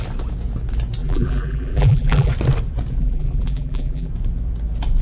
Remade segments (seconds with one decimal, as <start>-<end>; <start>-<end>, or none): 1.0-2.3; 3.0-4.1